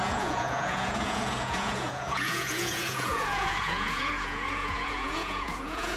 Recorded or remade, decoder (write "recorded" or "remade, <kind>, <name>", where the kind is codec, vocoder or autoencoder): remade, vocoder, Vocos